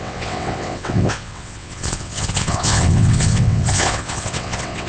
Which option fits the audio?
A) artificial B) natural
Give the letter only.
A